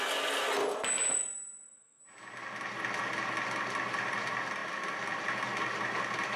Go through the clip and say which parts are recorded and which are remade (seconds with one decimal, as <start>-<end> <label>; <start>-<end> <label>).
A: 0.0-1.2 recorded; 1.2-2.0 remade; 2.0-6.4 recorded